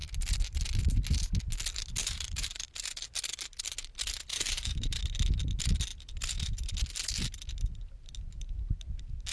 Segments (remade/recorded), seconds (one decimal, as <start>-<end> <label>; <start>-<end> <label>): 0.0-2.0 recorded; 2.0-2.7 remade; 2.7-4.3 recorded; 4.3-5.0 remade; 5.0-9.3 recorded